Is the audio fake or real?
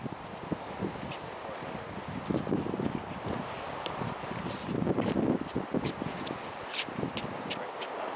real